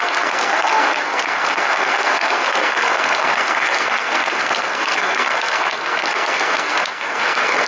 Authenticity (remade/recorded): remade